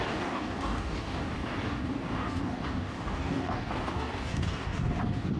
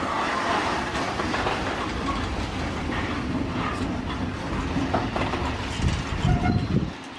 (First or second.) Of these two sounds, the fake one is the first